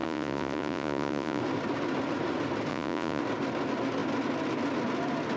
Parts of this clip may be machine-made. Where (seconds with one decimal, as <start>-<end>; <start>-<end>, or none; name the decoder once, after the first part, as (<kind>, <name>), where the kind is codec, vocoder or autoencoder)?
0.0-1.4 (vocoder, Vocos); 2.7-3.2